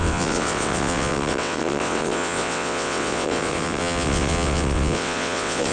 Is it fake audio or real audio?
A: fake